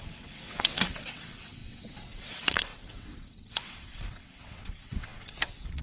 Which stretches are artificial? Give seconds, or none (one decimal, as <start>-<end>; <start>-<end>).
0.0-5.8